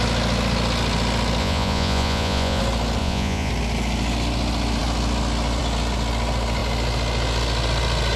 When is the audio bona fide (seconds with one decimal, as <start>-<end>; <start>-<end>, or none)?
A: 0.0-1.4; 2.6-3.0; 3.5-8.2